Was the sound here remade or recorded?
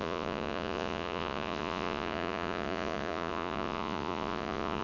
remade